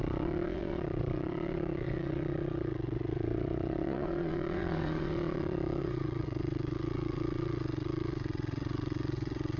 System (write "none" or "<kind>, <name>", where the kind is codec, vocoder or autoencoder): vocoder, WaveNeXt